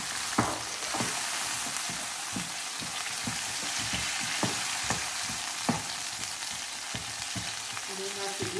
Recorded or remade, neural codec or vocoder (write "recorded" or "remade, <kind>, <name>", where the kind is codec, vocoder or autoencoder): recorded